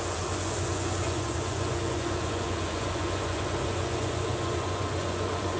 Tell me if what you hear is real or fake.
fake